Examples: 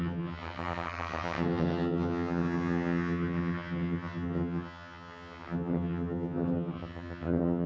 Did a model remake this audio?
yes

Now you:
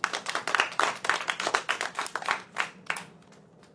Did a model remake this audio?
no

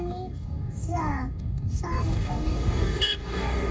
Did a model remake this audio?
yes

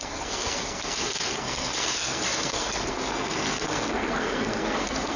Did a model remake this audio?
yes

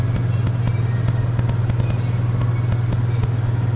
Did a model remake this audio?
no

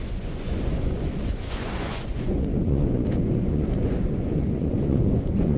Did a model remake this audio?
yes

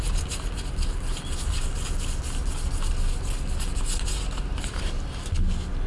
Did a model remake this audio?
no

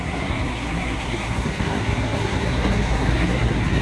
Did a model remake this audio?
yes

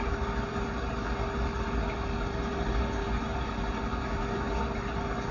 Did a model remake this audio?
no